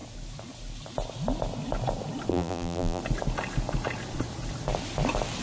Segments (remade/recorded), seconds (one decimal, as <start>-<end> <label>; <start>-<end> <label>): 0.0-2.3 recorded; 2.3-3.0 remade; 3.0-5.4 recorded